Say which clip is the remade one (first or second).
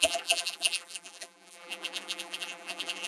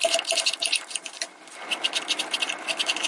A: first